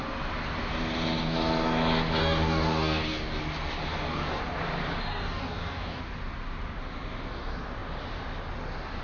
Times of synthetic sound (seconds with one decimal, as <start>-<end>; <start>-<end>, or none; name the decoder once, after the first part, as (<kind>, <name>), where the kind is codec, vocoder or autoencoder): 2.2-3.4 (codec, DAC); 3.9-4.4; 5.0-6.0